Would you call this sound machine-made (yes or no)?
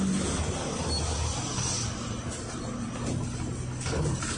no